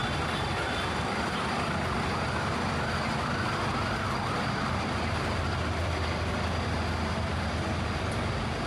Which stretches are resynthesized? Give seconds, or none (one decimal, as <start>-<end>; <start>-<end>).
none